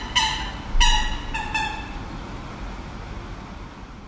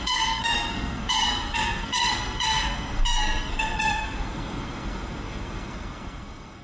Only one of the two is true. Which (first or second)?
first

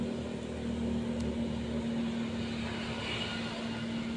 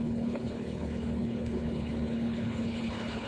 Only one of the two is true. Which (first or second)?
first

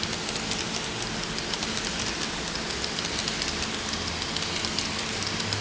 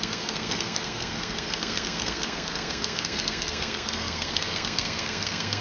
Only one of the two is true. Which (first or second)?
first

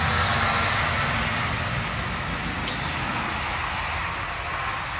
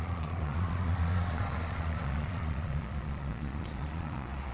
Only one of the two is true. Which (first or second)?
first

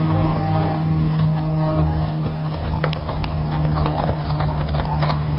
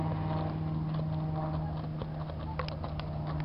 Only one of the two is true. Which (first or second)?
second